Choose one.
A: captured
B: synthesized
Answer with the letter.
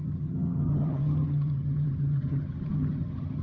B